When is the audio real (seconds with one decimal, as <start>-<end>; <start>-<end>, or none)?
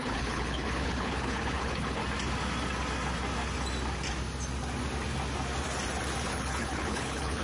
2.0-6.3